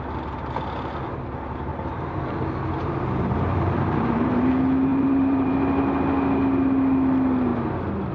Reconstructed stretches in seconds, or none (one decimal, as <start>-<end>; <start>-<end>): 1.7-2.3; 2.8-4.5; 4.9-5.5